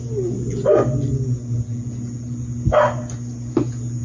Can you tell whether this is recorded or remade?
recorded